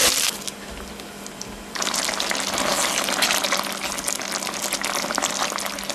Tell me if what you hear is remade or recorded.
recorded